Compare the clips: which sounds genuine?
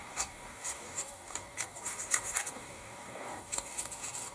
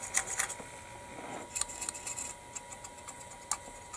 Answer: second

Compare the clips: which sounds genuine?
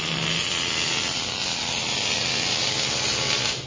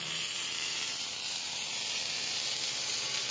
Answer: first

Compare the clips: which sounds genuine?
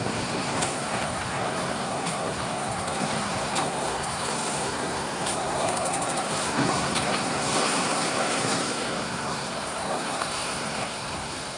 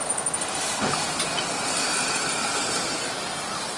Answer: second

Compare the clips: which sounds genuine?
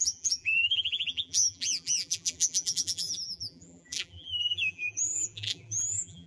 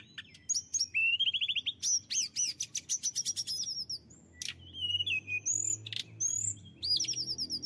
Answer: second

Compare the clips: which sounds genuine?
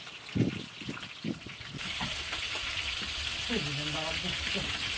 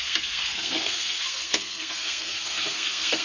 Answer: first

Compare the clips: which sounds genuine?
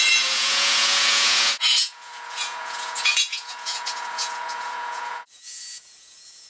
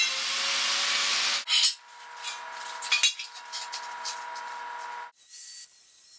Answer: second